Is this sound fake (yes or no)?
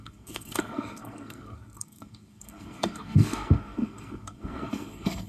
yes